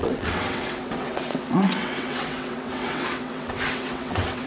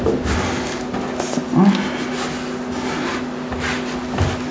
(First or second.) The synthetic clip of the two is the first